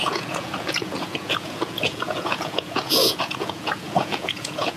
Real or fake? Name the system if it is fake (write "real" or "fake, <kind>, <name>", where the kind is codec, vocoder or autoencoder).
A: fake, vocoder, Vocos